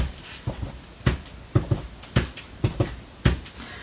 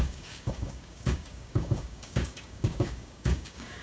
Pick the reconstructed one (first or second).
second